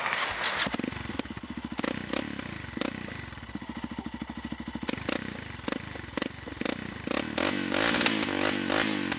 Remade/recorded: recorded